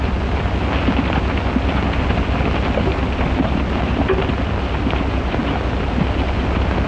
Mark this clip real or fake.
real